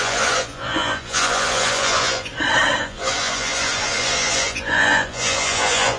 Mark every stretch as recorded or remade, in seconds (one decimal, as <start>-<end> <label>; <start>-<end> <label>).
0.0-2.3 remade; 2.3-2.8 recorded; 2.8-6.0 remade